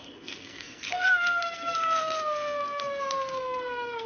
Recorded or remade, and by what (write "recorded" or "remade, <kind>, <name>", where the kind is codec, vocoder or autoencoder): remade, codec, SNAC